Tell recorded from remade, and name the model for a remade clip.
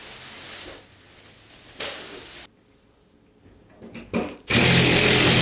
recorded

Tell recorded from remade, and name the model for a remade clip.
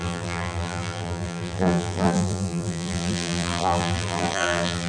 remade, vocoder, BigVGAN v2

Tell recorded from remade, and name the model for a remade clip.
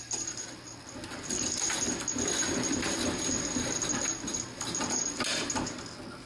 recorded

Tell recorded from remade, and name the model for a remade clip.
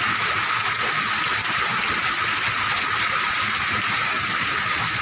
recorded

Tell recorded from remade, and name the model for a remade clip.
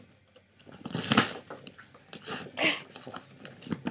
recorded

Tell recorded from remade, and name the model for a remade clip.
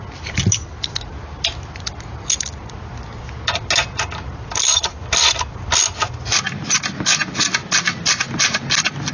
recorded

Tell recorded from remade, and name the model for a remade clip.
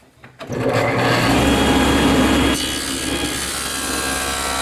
recorded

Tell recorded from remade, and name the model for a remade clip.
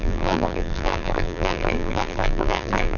remade, vocoder, BigVGAN v2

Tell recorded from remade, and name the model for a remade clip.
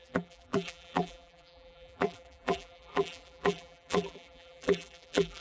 remade, vocoder, BigVGAN v2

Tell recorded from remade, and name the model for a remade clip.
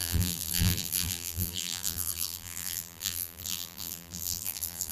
remade, vocoder, BigVGAN v2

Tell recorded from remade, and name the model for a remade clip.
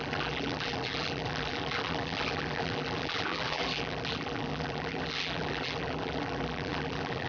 remade, vocoder, BigVGAN v2